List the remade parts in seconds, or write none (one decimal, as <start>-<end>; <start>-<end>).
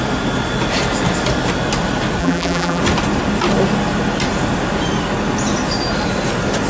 2.2-2.8